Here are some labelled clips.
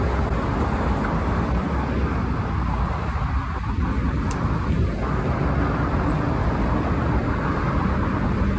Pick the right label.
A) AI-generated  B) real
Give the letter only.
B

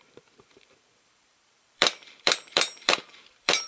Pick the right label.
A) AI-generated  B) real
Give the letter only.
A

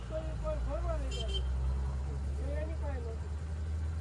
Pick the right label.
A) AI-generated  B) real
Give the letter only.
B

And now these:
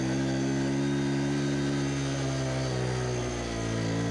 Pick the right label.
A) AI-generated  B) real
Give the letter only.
B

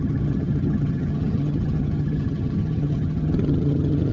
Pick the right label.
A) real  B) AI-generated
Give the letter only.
B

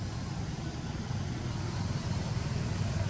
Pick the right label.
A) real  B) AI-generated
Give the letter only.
A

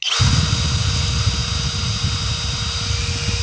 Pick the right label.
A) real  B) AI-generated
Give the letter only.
A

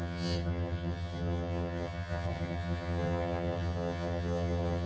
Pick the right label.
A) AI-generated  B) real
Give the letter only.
A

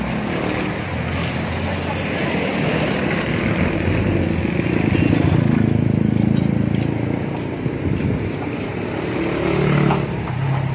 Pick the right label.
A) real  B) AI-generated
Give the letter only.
A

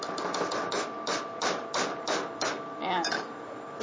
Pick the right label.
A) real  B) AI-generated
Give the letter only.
A